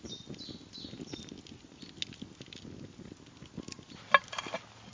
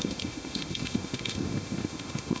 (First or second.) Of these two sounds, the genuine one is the first